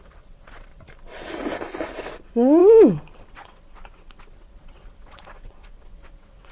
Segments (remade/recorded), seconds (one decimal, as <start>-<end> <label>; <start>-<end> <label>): 0.0-0.7 remade; 0.7-2.2 recorded; 2.2-2.6 remade; 2.6-3.3 recorded; 3.3-6.5 remade